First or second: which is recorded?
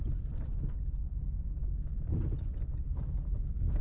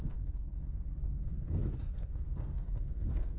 first